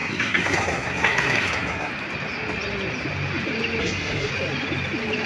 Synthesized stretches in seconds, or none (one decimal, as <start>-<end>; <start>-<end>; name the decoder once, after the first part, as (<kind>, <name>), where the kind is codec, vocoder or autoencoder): 0.0-1.9 (codec, SNAC); 3.8-4.3